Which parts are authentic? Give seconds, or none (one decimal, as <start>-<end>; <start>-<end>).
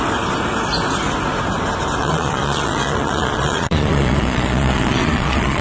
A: 0.0-2.0